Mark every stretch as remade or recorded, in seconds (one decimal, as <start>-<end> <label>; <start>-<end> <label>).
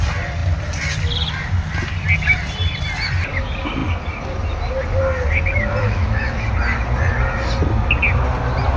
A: 0.0-5.8 recorded; 5.8-6.5 remade; 6.5-8.8 recorded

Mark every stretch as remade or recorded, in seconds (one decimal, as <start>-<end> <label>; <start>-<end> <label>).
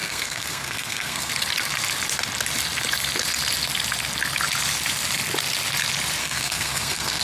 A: 0.0-1.3 remade; 1.3-6.2 recorded; 6.2-7.2 remade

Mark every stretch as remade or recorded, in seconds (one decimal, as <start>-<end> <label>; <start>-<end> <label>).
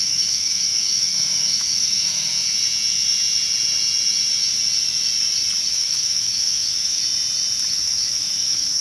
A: 0.0-2.3 remade; 2.3-5.7 recorded; 5.7-7.0 remade; 7.0-7.7 recorded; 7.7-8.8 remade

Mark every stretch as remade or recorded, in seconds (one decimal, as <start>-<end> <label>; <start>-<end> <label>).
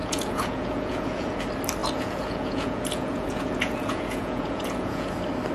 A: 0.0-1.4 remade; 1.4-1.8 recorded; 1.8-5.1 remade; 5.1-5.5 recorded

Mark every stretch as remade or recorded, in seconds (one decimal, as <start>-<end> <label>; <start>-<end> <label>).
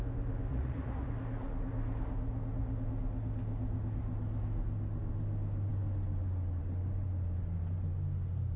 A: 0.0-0.5 recorded; 0.5-1.1 remade; 1.1-8.6 recorded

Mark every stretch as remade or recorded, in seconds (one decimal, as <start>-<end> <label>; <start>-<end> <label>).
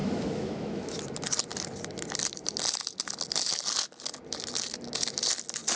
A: 0.0-1.0 remade; 1.0-5.8 recorded